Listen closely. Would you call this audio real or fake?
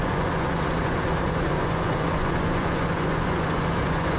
fake